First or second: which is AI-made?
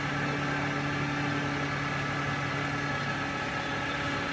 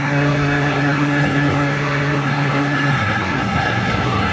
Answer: second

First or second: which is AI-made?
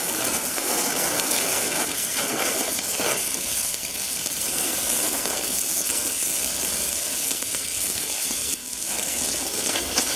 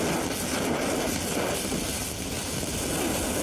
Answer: first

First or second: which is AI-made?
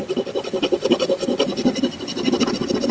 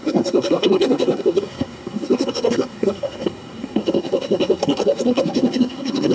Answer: second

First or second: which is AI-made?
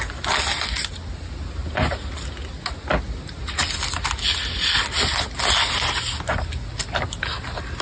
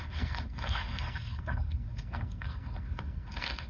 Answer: second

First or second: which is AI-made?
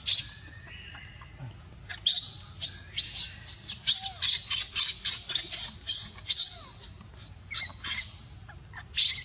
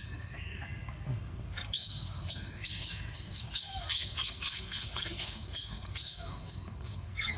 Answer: second